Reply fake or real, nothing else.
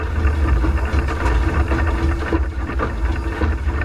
real